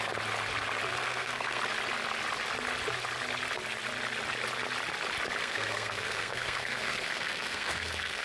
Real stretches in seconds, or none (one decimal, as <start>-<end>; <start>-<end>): 0.0-0.9; 1.6-5.4